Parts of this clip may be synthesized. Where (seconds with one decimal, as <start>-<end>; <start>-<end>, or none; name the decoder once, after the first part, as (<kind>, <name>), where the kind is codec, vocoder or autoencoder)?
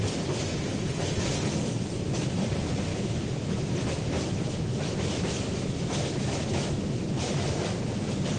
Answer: 2.9-7.0 (autoencoder, DAC-VAE)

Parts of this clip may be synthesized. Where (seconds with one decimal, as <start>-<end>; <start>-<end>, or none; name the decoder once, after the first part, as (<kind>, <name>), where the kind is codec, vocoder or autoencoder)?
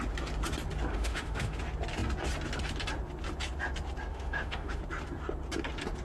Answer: 0.9-1.6 (autoencoder, DAC-VAE); 4.1-4.8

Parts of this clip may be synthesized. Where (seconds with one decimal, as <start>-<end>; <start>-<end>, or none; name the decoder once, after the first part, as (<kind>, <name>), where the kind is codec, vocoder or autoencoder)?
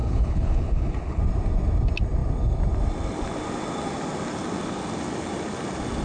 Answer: 0.0-1.2 (codec, HILCodec)